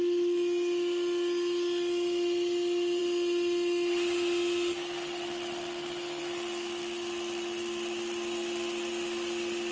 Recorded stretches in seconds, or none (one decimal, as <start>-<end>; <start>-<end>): 0.0-9.7

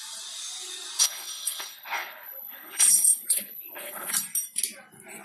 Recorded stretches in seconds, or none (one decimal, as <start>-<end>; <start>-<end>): 0.0-1.0; 4.1-5.2

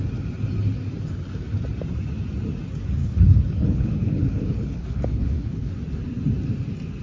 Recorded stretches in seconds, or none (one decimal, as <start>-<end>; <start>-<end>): 0.0-3.0; 5.7-7.0

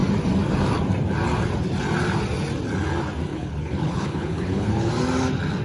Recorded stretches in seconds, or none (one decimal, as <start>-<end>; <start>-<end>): 0.0-3.3; 4.9-5.6

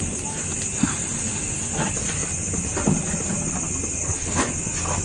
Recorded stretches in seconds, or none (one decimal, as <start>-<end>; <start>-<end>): 0.0-4.0; 4.5-5.0

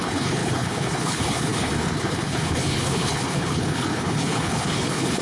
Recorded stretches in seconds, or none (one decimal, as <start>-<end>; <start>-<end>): none

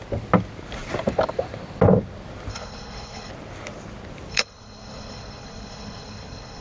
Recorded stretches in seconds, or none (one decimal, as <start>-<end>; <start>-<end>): 0.0-2.5; 3.3-4.3